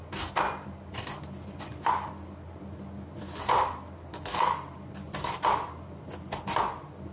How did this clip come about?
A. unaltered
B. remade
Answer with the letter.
A